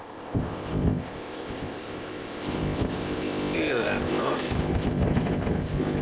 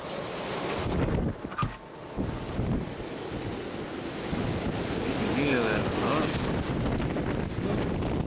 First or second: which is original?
second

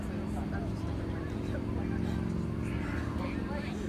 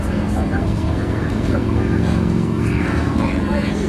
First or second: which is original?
first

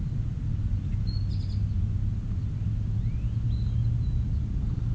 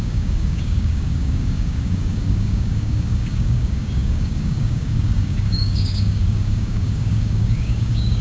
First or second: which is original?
first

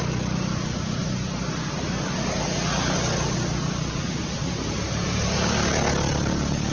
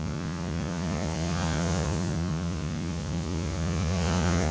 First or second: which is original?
first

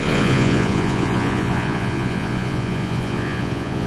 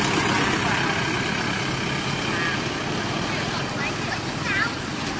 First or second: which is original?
second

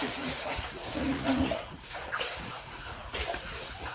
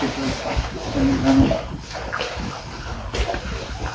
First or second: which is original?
second